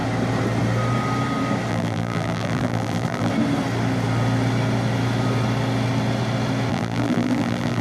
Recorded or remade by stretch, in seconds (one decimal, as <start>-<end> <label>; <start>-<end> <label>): 0.0-1.7 recorded; 1.7-3.3 remade; 3.3-6.7 recorded; 6.7-7.8 remade